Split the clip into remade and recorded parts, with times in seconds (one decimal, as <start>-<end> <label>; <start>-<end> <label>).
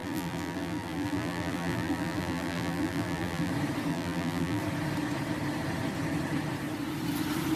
0.0-3.5 remade; 3.5-3.9 recorded; 3.9-4.6 remade; 4.6-7.6 recorded